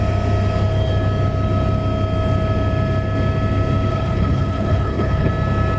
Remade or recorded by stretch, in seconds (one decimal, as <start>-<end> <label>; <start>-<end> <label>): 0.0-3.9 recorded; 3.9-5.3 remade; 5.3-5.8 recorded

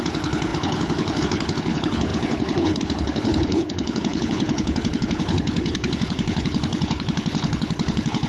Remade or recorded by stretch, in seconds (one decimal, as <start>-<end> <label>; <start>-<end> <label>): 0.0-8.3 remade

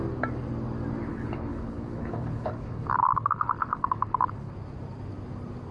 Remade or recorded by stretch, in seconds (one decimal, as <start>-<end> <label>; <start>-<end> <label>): 0.0-1.1 recorded; 1.1-4.5 remade; 4.5-5.7 recorded

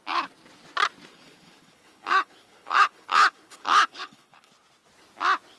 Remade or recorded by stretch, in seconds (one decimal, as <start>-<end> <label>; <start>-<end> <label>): 0.0-1.1 recorded; 1.1-4.5 remade; 4.5-5.6 recorded

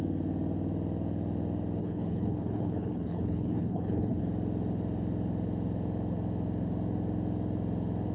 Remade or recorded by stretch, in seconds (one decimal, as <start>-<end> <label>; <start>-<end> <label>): 0.0-1.8 recorded; 1.8-4.2 remade; 4.2-8.1 recorded